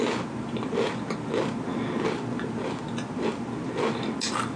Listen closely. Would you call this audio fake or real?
real